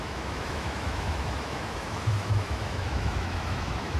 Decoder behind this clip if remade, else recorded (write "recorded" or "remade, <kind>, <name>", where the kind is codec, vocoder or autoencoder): remade, autoencoder, DAC-VAE